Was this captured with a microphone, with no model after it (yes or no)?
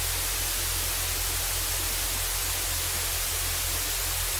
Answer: yes